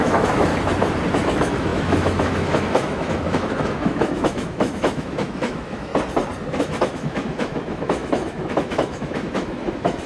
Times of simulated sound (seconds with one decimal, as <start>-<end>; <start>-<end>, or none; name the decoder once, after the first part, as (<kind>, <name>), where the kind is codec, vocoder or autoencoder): 0.0-0.5 (autoencoder, DAC-VAE); 1.1-5.9; 6.6-10.1